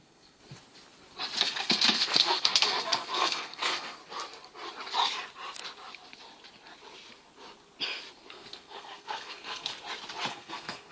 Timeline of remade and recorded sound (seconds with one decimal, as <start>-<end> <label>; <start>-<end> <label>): 0.0-0.4 remade; 0.4-1.4 recorded; 1.4-4.0 remade; 4.0-8.3 recorded; 8.3-9.7 remade; 9.7-10.3 recorded; 10.3-10.9 remade